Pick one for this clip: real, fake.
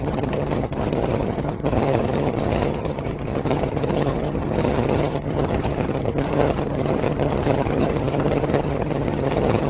fake